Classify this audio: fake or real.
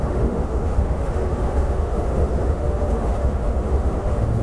fake